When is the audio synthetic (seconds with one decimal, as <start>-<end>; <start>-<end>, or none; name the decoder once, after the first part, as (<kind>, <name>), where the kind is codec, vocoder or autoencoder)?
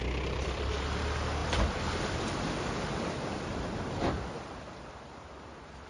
0.0-0.7 (vocoder, BigVGAN v2); 1.4-4.9